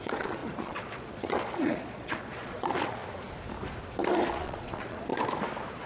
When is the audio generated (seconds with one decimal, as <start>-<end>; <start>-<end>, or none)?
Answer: 0.0-3.0; 4.3-5.1